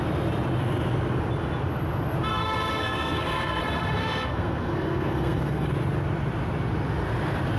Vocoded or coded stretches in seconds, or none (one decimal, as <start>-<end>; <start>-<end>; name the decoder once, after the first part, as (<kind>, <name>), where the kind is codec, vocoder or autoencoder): 2.3-3.6 (codec, SNAC); 4.0-5.7